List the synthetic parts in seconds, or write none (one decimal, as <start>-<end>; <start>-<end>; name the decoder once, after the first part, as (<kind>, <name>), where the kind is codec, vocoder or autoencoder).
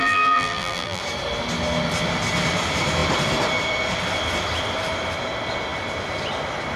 0.0-1.0 (vocoder, BigVGAN v2)